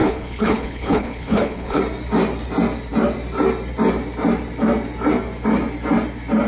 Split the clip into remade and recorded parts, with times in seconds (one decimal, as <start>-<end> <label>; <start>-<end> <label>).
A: 0.0-1.8 remade; 1.8-6.5 recorded